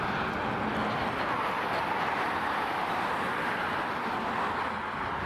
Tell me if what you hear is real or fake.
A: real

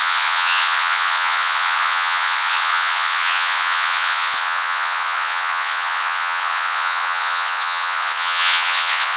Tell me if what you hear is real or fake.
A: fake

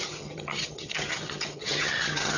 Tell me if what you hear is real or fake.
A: fake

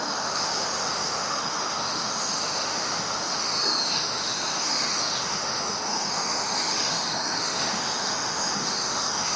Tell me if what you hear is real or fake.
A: fake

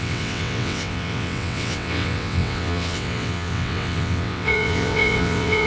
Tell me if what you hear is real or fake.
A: fake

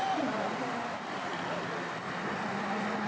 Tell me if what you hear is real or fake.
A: real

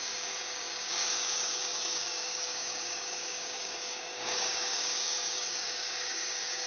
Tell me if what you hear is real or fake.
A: fake